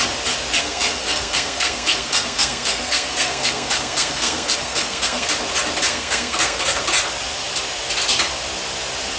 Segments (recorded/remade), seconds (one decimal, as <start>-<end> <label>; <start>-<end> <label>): 0.0-0.6 recorded; 0.6-5.3 remade; 5.3-5.9 recorded; 5.9-6.8 remade; 6.8-9.2 recorded